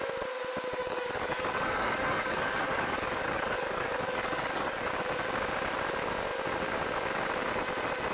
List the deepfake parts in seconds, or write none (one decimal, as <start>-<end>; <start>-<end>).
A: 0.8-4.9